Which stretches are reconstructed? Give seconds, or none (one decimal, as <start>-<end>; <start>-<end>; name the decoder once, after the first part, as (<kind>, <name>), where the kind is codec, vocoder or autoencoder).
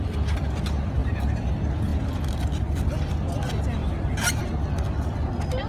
1.0-1.5 (vocoder, BigVGAN v2); 3.8-4.4